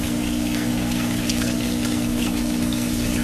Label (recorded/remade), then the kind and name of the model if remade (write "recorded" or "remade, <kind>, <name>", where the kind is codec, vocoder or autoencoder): remade, codec, SNAC